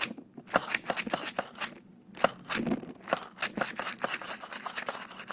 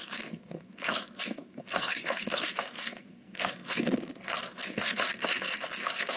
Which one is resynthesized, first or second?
second